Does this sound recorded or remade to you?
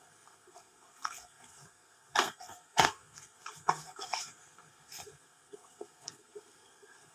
remade